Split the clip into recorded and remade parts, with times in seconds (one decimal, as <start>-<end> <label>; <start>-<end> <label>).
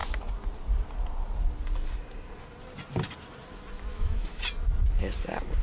0.0-3.9 recorded; 3.9-4.4 remade; 4.4-5.6 recorded